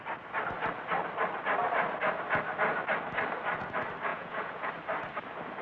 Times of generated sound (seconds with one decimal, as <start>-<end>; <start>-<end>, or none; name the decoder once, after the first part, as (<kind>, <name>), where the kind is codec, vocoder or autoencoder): 4.1-4.7 (vocoder, Vocos)